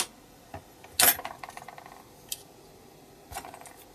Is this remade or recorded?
recorded